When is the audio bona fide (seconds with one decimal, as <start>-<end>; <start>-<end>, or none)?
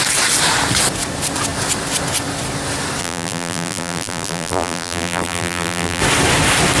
0.0-3.0; 6.0-6.8